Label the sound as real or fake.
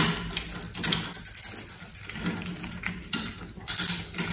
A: real